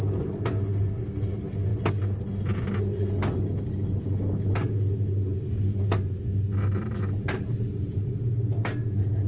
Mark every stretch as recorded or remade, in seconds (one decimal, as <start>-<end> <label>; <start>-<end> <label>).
0.0-9.3 recorded